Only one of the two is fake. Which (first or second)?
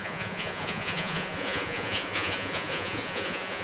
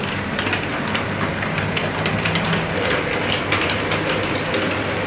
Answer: first